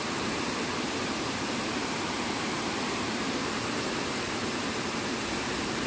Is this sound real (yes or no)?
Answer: no